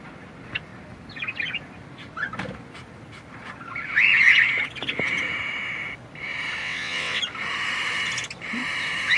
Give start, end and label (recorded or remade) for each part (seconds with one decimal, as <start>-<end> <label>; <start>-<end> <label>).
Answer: 0.0-6.6 recorded; 6.6-7.2 remade; 7.2-9.2 recorded